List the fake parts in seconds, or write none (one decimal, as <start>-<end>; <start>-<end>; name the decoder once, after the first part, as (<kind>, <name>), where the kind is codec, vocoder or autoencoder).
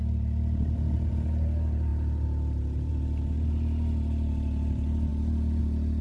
none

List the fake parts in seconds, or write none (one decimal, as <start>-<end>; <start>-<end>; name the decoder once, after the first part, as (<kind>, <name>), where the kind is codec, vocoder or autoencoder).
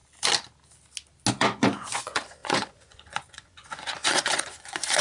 1.3-5.0 (vocoder, Vocos)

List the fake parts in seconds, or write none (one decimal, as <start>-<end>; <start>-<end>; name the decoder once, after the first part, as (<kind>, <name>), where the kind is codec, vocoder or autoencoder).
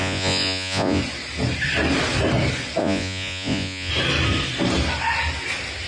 0.0-1.0 (vocoder, Vocos); 2.8-3.9